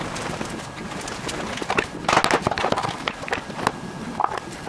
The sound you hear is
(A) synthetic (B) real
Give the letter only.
B